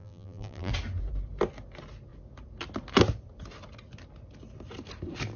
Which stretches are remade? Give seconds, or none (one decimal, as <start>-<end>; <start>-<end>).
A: 0.0-0.7